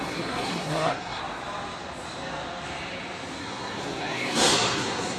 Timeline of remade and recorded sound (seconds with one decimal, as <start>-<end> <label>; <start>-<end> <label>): 0.0-1.2 remade; 1.2-3.4 recorded; 3.4-5.2 remade